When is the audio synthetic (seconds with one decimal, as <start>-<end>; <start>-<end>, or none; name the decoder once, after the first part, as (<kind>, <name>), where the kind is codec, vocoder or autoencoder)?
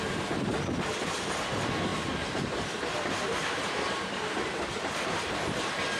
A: 1.9-5.3 (vocoder, BigVGAN v2)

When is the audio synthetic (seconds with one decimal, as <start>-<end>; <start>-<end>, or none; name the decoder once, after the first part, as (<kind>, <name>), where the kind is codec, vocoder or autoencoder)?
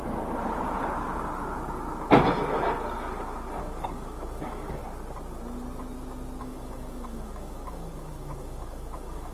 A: 3.6-4.8 (codec, DAC); 6.4-9.3